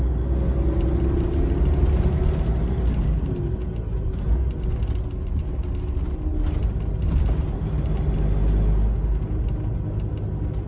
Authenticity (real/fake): real